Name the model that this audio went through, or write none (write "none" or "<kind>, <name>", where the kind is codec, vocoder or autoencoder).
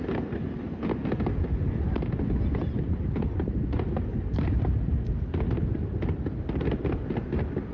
none